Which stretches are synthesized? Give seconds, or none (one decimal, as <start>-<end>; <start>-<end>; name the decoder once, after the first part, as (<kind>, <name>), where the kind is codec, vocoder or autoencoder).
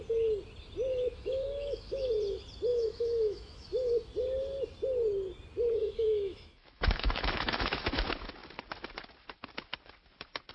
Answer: 0.9-2.1 (autoencoder, DAC-VAE); 2.7-3.9; 5.8-7.9